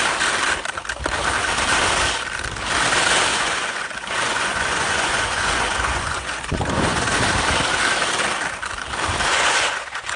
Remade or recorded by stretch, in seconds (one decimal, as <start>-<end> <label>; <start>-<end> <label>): 0.0-3.3 recorded; 3.3-7.2 remade; 7.2-9.3 recorded; 9.3-10.2 remade